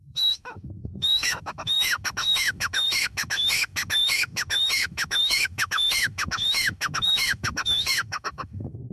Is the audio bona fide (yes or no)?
no